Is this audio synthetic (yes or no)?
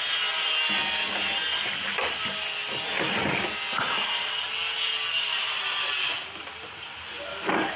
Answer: no